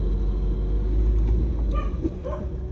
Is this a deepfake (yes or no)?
no